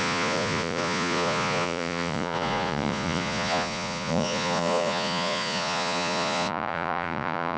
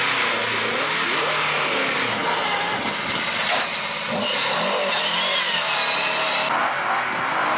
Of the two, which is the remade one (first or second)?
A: first